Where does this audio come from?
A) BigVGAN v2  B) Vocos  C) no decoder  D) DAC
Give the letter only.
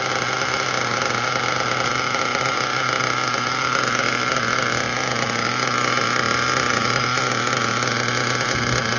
C